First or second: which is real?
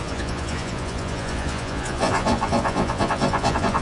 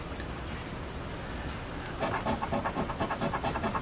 second